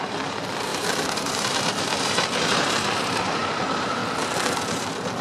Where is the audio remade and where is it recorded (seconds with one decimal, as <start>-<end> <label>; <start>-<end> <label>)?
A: 0.0-4.0 remade; 4.0-4.6 recorded; 4.6-5.2 remade